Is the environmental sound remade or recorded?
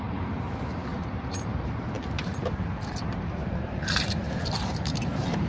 remade